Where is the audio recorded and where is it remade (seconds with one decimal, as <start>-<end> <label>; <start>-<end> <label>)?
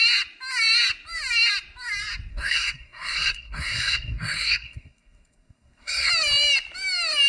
0.0-2.3 recorded; 2.3-6.1 remade; 6.1-7.3 recorded